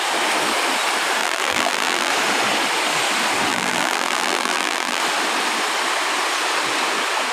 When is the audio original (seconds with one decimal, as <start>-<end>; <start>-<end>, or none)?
0.0-1.2; 2.1-3.5; 5.0-7.3